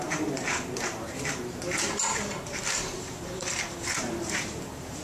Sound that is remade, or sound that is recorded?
remade